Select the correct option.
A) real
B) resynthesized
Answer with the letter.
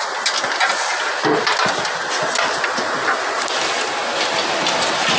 A